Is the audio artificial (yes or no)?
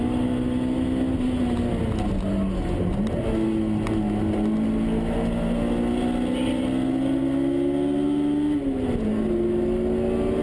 no